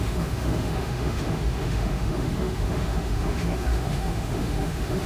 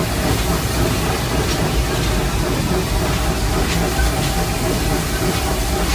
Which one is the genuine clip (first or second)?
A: second